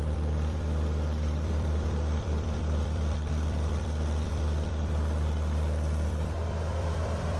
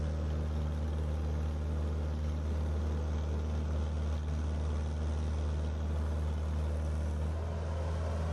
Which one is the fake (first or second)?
first